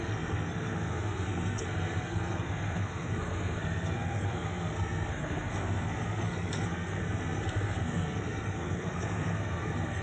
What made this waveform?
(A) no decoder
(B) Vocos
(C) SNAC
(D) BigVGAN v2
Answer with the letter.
C